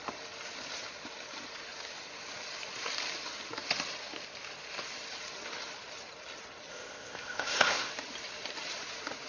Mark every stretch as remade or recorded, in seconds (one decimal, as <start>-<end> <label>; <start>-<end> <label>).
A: 0.0-6.7 recorded; 6.7-7.9 remade; 7.9-9.3 recorded